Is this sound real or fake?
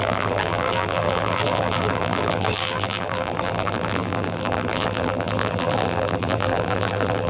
fake